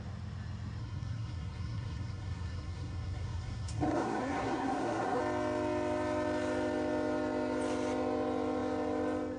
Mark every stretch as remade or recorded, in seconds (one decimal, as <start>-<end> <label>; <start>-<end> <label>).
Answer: 0.0-0.8 recorded; 0.8-5.2 remade; 5.2-9.4 recorded